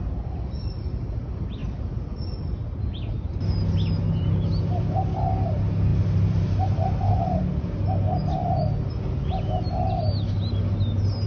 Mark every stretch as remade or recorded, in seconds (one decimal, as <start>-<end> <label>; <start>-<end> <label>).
0.0-1.6 recorded; 1.6-2.2 remade; 2.2-5.9 recorded; 5.9-7.4 remade; 7.4-11.3 recorded